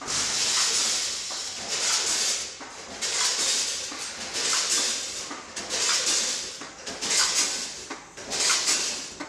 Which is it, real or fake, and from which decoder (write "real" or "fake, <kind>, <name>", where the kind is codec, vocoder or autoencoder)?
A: real